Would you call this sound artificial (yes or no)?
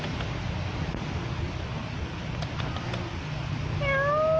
no